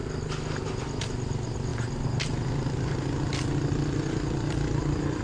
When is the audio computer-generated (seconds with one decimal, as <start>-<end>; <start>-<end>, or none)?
none